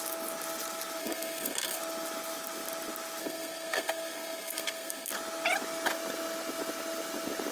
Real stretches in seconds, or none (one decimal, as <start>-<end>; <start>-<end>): 0.0-1.0; 1.8-3.2; 5.1-7.5